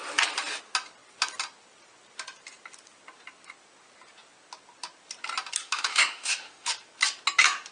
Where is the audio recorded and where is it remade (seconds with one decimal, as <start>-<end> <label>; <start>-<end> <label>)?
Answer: 0.0-5.6 recorded; 5.6-6.7 remade; 6.7-7.7 recorded